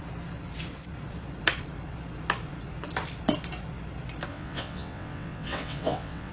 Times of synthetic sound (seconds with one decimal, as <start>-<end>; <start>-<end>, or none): 4.3-6.3